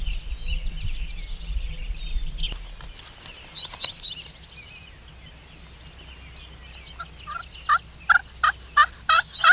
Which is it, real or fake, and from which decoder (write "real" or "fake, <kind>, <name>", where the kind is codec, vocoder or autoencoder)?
real